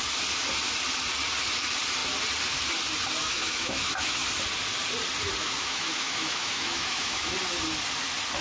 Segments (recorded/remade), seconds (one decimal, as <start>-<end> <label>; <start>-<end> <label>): 0.0-3.2 recorded; 3.2-4.2 remade; 4.2-5.4 recorded; 5.4-7.3 remade; 7.3-8.4 recorded